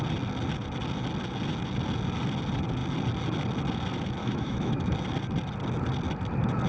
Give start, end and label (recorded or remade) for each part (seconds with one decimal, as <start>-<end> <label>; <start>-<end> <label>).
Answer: 0.0-4.2 recorded; 4.2-5.0 remade; 5.0-6.7 recorded